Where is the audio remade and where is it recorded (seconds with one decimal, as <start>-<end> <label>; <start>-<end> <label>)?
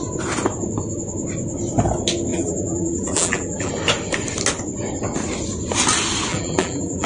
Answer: 0.0-2.3 recorded; 2.3-3.7 remade; 3.7-6.3 recorded; 6.3-7.1 remade